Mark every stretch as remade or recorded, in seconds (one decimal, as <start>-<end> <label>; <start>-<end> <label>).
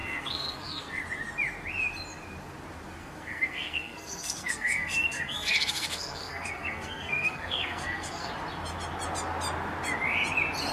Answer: 0.0-1.0 remade; 1.0-3.0 recorded; 3.0-8.3 remade; 8.3-10.7 recorded